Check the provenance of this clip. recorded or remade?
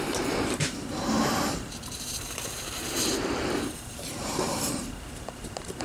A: remade